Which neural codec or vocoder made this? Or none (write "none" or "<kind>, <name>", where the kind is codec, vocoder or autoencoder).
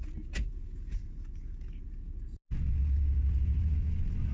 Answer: none